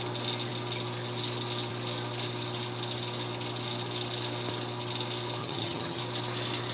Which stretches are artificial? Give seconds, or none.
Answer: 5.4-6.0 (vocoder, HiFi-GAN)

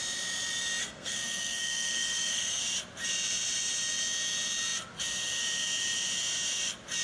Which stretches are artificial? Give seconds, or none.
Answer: 0.8-2.6 (codec, SNAC)

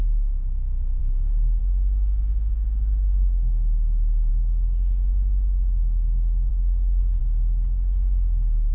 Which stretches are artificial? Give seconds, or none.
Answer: 1.0-1.6 (codec, DAC); 2.3-4.3; 6.5-7.2

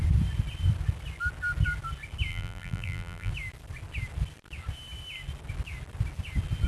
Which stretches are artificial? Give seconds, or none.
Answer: 2.3-3.3 (vocoder, BigVGAN v2)

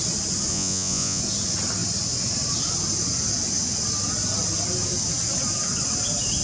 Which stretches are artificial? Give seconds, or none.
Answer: 0.5-1.2 (vocoder, Vocos)